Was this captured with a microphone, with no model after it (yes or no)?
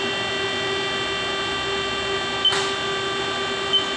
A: yes